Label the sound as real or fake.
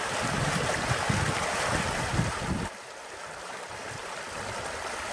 real